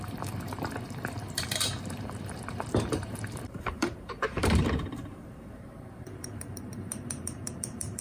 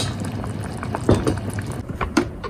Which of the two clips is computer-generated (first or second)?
first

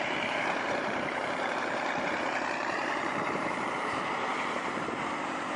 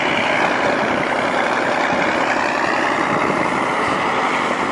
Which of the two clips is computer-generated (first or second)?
first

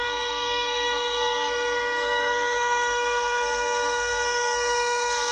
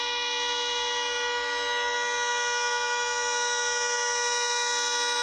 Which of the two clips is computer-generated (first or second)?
first